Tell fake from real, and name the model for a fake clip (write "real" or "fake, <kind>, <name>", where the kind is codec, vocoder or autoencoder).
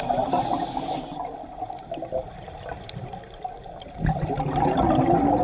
real